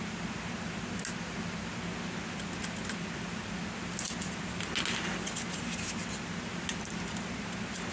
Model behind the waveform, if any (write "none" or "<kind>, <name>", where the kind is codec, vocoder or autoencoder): none